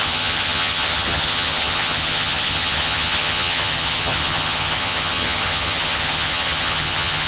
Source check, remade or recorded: remade